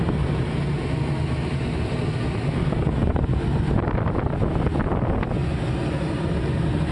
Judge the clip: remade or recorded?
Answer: recorded